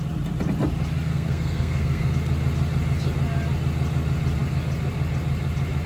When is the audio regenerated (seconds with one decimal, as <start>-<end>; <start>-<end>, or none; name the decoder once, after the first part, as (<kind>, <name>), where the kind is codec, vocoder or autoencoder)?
1.1-2.1 (codec, SNAC)